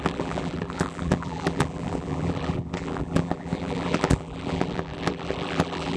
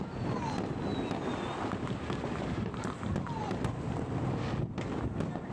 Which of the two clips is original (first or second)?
second